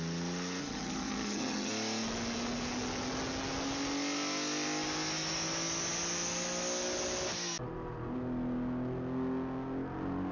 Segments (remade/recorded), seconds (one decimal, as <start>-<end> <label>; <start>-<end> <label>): 0.0-0.6 recorded; 0.6-1.7 remade; 1.7-10.3 recorded